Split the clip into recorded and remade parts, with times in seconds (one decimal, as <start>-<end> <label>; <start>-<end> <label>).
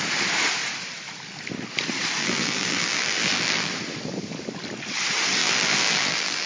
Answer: 0.0-2.2 recorded; 2.2-3.7 remade; 3.7-5.4 recorded; 5.4-6.5 remade